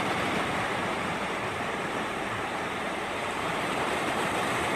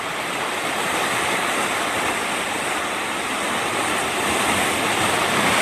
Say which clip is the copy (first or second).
first